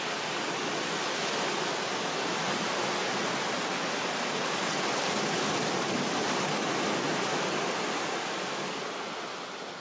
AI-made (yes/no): no